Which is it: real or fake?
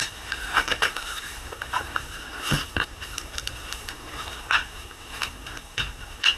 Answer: fake